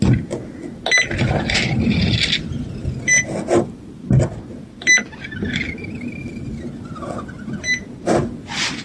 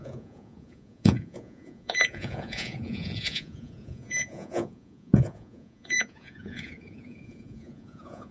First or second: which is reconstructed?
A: second